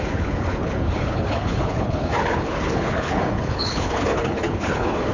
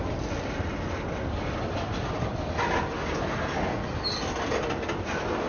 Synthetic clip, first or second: first